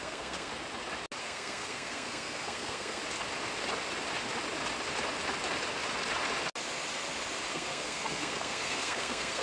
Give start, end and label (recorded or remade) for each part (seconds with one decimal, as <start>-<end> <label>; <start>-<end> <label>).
0.0-0.5 remade; 0.5-1.2 recorded; 1.2-3.0 remade; 3.0-7.5 recorded; 7.5-9.4 remade